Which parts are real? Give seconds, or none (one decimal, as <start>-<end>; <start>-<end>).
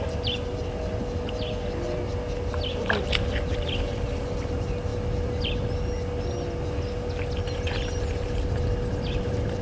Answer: 0.0-9.6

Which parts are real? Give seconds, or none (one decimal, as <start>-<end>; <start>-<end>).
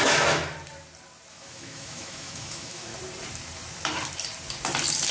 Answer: 0.4-1.3; 2.9-5.1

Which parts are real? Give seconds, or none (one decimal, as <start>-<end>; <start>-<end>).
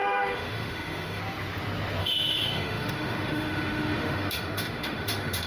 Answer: 1.2-2.0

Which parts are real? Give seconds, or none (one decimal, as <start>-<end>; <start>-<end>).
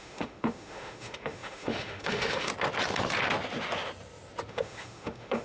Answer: 2.5-4.5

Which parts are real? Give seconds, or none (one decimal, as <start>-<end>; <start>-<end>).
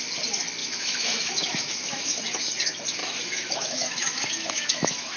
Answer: 0.0-0.6; 2.2-3.0